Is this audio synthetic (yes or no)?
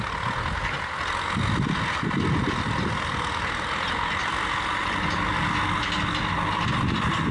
no